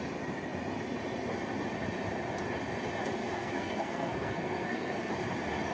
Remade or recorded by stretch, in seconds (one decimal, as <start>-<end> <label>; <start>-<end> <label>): 0.0-3.2 recorded; 3.2-5.1 remade; 5.1-5.7 recorded